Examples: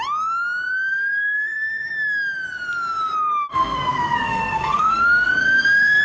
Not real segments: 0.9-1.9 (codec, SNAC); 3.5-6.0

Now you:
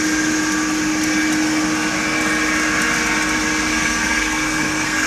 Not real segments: 3.7-5.1 (codec, SNAC)

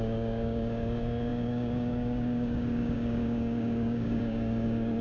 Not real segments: 0.0-5.0 (codec, DAC)

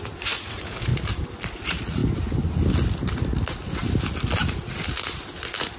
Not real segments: 0.0-0.9 (vocoder, Vocos); 1.5-2.0

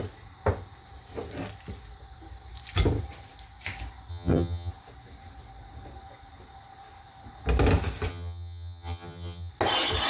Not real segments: 4.1-4.7 (vocoder, HiFi-GAN); 8.1-9.5